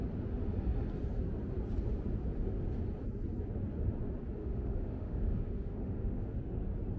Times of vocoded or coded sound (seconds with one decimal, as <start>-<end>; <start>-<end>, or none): 4.4-6.6